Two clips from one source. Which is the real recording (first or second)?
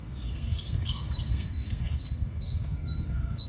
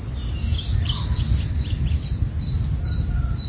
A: second